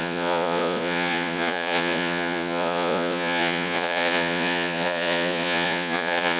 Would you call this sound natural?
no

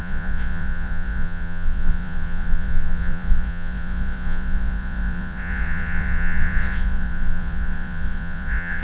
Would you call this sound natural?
no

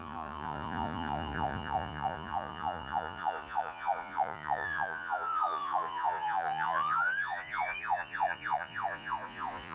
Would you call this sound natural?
no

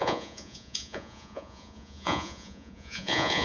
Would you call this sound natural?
no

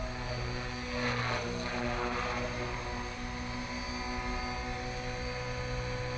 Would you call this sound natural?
yes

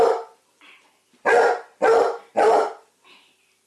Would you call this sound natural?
yes